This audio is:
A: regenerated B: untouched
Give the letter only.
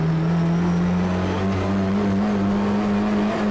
B